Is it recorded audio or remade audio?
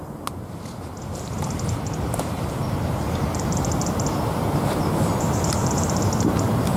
remade